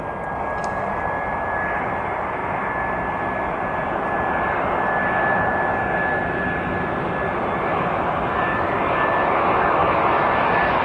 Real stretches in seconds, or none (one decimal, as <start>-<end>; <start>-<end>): 0.0-10.8